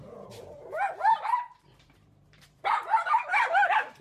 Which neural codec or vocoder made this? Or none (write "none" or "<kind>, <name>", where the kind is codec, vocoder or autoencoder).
vocoder, BigVGAN v2